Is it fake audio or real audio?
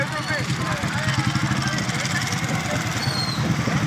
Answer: real